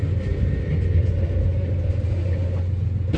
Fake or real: real